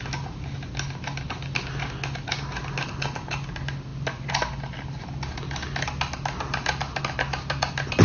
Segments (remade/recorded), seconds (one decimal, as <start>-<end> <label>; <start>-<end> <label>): 0.0-8.0 recorded